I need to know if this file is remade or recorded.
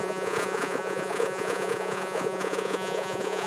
remade